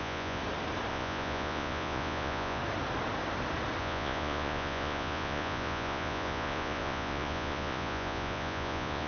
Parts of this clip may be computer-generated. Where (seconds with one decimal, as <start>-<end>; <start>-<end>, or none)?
0.0-0.4; 0.9-2.6; 3.8-9.1